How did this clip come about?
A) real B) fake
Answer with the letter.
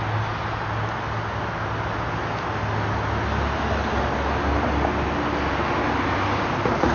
A